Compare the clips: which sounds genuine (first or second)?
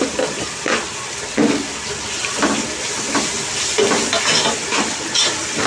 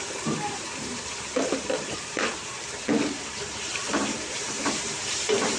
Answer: first